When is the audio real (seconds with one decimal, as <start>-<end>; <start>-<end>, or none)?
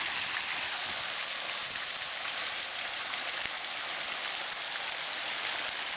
0.0-1.6; 3.2-6.0